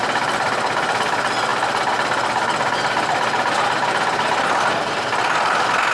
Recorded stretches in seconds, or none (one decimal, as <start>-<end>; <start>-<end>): 0.0-5.9